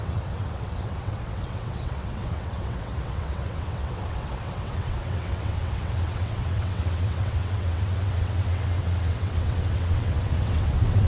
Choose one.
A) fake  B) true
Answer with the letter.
A